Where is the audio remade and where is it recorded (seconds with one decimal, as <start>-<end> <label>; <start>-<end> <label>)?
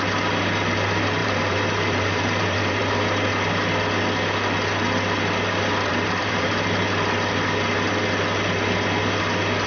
0.0-1.2 recorded; 1.2-2.8 remade; 2.8-5.9 recorded; 5.9-6.5 remade; 6.5-9.7 recorded